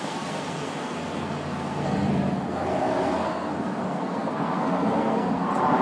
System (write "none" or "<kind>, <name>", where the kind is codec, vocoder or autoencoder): codec, SNAC